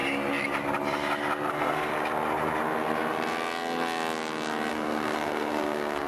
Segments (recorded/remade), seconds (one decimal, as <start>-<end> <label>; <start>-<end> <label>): 0.0-1.5 recorded; 1.5-1.9 remade; 1.9-4.7 recorded; 4.7-6.1 remade

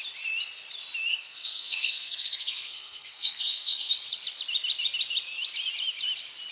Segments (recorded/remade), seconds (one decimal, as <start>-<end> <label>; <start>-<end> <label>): 0.0-1.1 recorded; 1.1-3.9 remade; 3.9-6.5 recorded

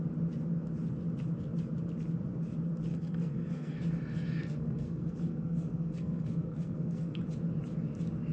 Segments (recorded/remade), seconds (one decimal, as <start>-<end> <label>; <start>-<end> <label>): 0.0-2.9 recorded; 2.9-3.8 remade; 3.8-4.4 recorded; 4.4-7.2 remade; 7.2-8.3 recorded